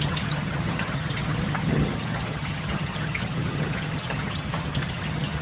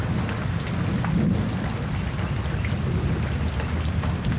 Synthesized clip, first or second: first